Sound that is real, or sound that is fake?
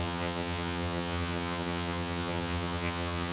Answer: fake